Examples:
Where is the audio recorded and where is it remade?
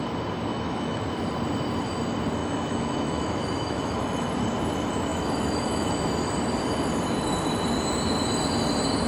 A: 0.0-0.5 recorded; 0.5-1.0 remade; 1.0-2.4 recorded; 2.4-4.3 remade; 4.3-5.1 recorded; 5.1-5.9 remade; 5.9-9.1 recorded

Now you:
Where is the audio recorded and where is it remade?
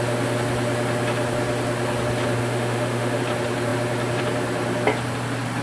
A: 0.0-2.4 recorded; 2.4-3.2 remade; 3.2-5.6 recorded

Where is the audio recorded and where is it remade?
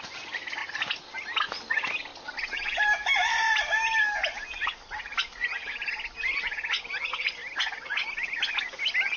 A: 0.0-9.2 recorded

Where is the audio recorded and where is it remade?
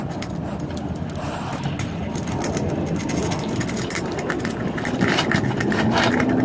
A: 0.0-6.4 recorded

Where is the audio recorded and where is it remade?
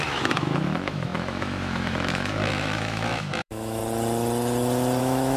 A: 0.0-3.8 remade; 3.8-5.0 recorded; 5.0-5.4 remade